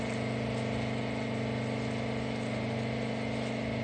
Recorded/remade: recorded